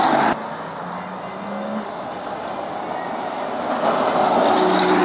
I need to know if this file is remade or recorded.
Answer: recorded